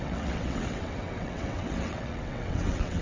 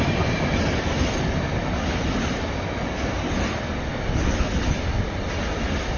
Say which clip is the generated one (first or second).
first